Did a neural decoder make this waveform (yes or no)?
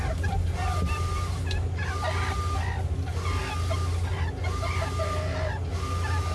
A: no